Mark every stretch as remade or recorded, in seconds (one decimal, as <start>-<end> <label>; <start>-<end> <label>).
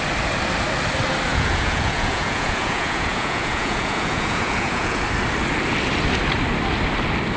0.0-1.3 recorded; 1.3-5.0 remade; 5.0-7.4 recorded